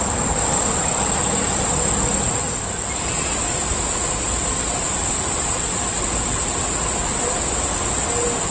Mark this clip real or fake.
real